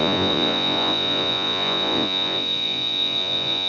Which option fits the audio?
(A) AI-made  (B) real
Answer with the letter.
A